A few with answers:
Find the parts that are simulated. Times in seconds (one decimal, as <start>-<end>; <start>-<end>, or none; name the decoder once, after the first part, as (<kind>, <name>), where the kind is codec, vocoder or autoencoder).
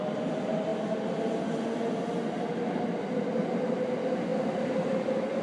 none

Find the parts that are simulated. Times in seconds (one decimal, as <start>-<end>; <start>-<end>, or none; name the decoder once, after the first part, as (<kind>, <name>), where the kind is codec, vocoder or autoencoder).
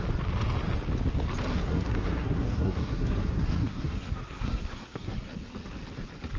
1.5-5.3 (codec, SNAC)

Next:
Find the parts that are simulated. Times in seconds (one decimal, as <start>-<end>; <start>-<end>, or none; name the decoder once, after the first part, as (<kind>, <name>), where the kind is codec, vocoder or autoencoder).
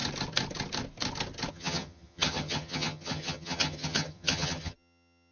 1.5-5.3 (vocoder, HiFi-GAN)